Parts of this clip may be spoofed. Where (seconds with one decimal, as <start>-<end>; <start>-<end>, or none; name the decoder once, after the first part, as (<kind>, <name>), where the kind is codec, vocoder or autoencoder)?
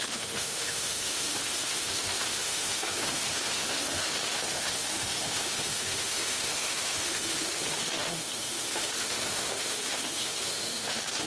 0.0-11.3 (autoencoder, DAC-VAE)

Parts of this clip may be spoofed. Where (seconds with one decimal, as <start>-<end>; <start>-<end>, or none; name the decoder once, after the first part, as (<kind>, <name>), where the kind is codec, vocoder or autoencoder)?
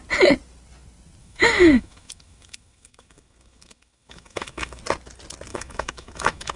1.2-4.8 (autoencoder, DAC-VAE); 5.5-6.6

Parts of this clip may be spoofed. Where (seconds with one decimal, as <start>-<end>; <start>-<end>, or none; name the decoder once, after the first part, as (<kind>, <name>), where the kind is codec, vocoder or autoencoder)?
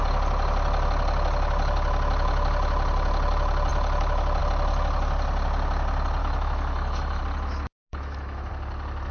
6.2-7.2 (autoencoder, DAC-VAE); 7.9-8.5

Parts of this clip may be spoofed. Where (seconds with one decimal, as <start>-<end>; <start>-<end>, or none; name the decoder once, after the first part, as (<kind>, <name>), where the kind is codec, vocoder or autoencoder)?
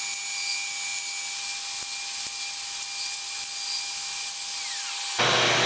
none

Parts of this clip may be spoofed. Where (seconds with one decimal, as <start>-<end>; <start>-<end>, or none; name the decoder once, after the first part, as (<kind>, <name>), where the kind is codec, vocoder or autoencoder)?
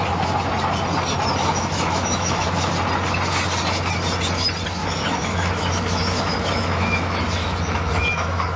1.4-2.7 (autoencoder, DAC-VAE); 4.8-8.6